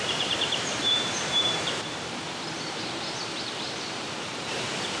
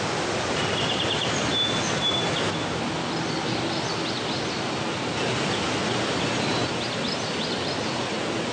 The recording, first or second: second